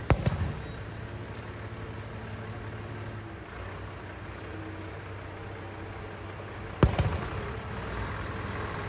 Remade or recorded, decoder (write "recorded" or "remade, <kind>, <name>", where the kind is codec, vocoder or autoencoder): recorded